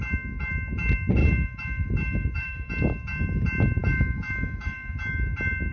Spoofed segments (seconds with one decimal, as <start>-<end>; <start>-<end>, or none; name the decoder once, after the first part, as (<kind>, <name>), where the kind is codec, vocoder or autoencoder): 1.2-2.7 (autoencoder, DAC-VAE); 3.8-5.0